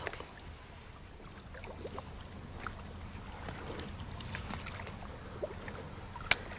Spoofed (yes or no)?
no